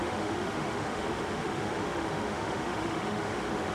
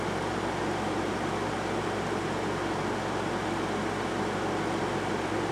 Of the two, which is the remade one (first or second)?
first